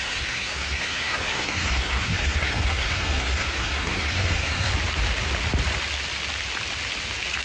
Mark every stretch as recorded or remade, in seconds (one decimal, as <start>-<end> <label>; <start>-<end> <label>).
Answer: 0.0-4.7 remade; 4.7-7.4 recorded